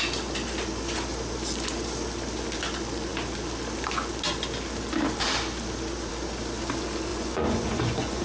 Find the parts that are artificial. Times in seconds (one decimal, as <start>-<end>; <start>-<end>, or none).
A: 7.1-8.2